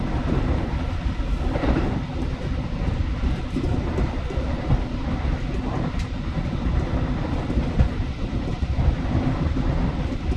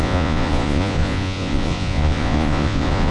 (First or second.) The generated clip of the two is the second